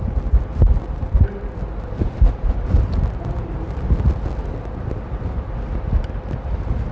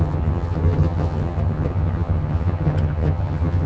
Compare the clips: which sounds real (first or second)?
first